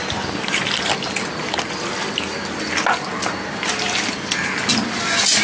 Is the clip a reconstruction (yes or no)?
no